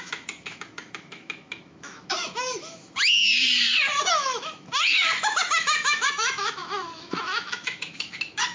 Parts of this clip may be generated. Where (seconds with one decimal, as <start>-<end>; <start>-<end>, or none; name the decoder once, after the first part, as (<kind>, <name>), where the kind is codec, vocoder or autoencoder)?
0.0-3.2 (autoencoder, DAC-VAE); 4.0-8.5

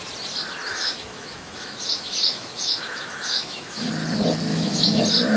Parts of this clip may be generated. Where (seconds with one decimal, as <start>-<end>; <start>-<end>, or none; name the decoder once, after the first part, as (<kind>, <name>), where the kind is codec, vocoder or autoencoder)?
0.7-3.9 (autoencoder, DAC-VAE); 4.5-5.0